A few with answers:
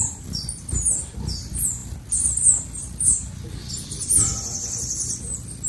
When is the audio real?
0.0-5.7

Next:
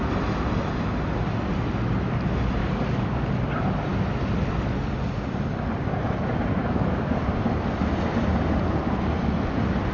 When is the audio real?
0.0-2.6; 3.3-6.6; 7.2-9.9

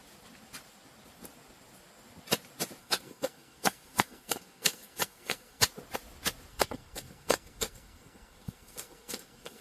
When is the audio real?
0.0-2.8; 5.6-6.5

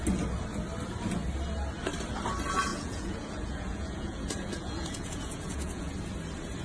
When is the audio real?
0.0-2.7; 5.9-6.6

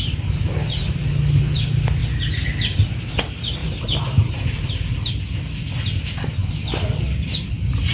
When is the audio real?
0.0-3.6; 5.1-7.9

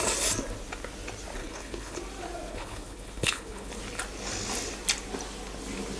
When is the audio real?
0.0-1.4; 2.0-2.5; 3.7-6.0

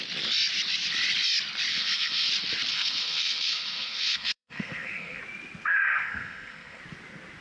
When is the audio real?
0.0-1.7; 2.3-2.7; 5.2-5.7; 6.8-7.4

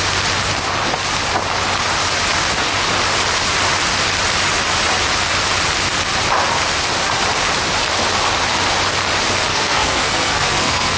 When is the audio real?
0.0-9.5